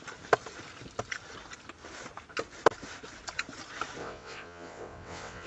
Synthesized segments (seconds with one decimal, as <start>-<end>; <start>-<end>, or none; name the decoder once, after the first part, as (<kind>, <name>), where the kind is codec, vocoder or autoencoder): 4.0-5.5 (vocoder, WaveNeXt)